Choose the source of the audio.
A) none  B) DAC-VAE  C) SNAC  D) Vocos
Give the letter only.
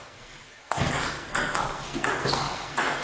C